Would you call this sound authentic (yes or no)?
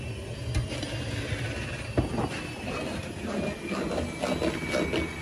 yes